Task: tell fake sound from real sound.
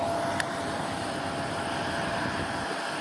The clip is real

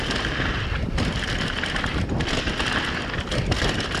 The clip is real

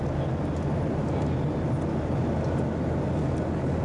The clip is real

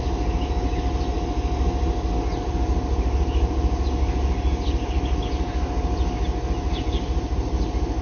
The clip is real